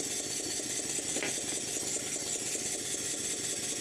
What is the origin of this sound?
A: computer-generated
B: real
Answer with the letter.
B